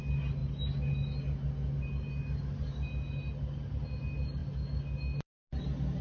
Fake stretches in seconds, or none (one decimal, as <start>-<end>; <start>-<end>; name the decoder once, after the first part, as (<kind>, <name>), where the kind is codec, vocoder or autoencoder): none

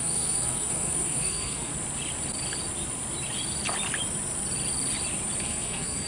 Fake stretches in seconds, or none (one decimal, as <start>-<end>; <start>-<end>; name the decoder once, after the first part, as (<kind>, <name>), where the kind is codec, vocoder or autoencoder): 0.0-1.7 (codec, SNAC); 5.4-6.1

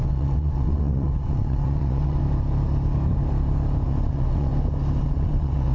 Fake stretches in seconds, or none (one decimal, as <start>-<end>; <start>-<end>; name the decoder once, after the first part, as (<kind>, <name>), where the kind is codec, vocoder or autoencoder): 0.0-2.2 (vocoder, WaveNeXt); 3.9-4.5; 5.0-5.7

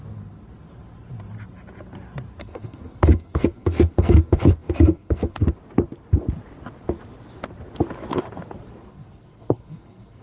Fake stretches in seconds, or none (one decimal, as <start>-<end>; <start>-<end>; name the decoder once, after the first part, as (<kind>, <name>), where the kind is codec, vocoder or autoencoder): 2.4-5.4 (codec, SNAC); 8.9-10.2

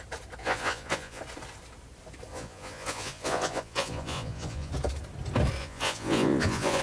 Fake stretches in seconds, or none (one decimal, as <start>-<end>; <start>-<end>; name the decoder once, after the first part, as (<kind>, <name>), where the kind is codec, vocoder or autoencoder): 0.4-1.2 (vocoder, Vocos); 2.3-4.7; 5.6-6.8

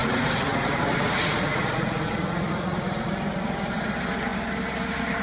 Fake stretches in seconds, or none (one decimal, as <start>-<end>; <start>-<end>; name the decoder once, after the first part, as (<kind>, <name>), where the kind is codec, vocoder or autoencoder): 0.0-3.1 (vocoder, Vocos)